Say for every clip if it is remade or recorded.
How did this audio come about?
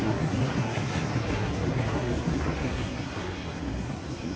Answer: remade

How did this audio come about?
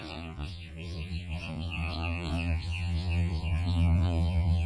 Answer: remade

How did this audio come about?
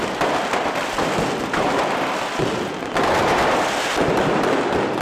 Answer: remade